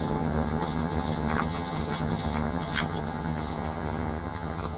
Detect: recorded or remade remade